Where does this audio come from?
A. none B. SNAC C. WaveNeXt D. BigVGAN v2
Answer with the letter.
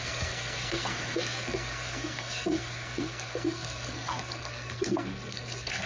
B